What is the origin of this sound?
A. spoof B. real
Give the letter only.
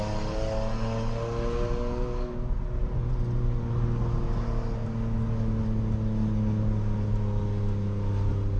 B